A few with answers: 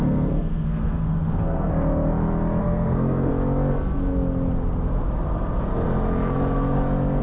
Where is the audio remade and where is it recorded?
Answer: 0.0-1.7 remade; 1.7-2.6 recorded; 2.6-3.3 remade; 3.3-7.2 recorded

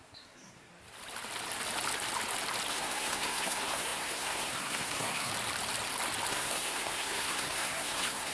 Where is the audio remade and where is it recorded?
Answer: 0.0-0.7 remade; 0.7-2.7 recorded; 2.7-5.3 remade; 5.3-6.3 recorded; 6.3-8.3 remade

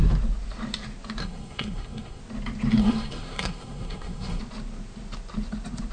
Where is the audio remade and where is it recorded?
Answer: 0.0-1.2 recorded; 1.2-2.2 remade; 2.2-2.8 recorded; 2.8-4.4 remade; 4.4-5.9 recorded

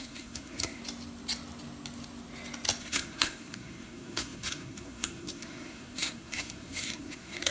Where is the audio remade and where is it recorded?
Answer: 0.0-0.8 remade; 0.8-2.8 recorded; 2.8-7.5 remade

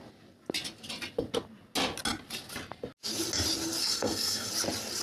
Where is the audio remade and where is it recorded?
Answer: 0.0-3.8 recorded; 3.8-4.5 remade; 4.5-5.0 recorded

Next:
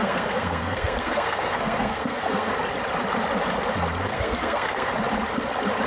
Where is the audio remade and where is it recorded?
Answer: 0.0-2.5 remade; 2.5-4.1 recorded; 4.1-4.9 remade; 4.9-5.9 recorded